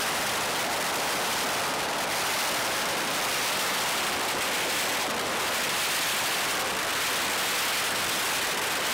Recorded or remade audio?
recorded